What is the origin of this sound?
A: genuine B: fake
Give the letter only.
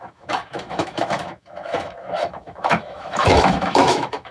B